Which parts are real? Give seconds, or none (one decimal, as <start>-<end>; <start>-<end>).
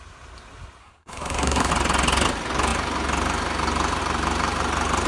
0.0-0.8; 1.7-5.1